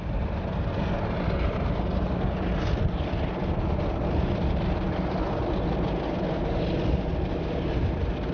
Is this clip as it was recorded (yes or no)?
yes